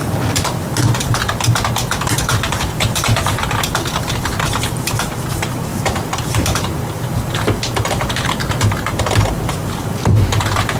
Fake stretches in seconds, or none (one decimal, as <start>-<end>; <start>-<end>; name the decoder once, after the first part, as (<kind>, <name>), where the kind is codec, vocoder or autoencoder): 2.3-3.6 (vocoder, BigVGAN v2); 5.7-9.0